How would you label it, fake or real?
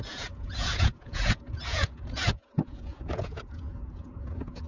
fake